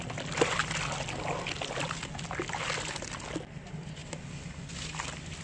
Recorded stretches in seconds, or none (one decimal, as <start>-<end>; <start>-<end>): 0.0-5.4